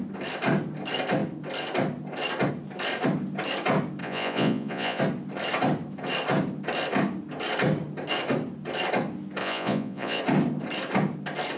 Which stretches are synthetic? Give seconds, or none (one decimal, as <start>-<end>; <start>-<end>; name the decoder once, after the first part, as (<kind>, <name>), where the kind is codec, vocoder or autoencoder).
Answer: 4.0-5.0 (vocoder, Vocos); 9.4-10.2